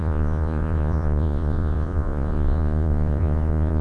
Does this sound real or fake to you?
fake